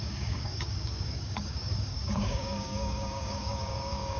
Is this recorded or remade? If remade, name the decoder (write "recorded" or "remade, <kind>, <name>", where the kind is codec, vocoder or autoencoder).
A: remade, codec, DAC